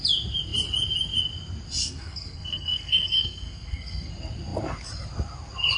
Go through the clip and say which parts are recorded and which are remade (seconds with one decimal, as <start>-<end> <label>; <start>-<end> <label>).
0.0-1.8 recorded; 1.8-4.1 remade; 4.1-5.8 recorded